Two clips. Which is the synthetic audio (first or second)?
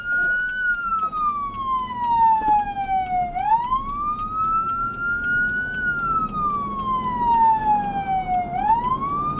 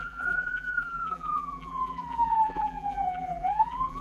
second